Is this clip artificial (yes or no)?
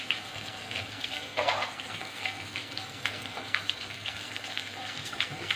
yes